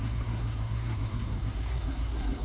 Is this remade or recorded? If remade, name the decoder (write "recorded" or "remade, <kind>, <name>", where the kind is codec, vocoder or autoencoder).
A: remade, codec, SNAC